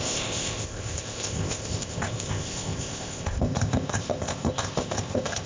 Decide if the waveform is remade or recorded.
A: remade